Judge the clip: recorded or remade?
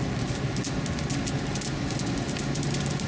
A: recorded